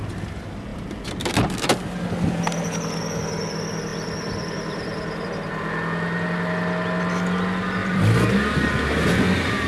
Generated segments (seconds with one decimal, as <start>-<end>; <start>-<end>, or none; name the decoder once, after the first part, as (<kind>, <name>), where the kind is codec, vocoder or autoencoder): 3.9-5.5 (vocoder, BigVGAN v2); 7.8-8.3